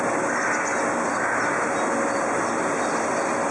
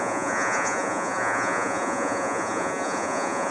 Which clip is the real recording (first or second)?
first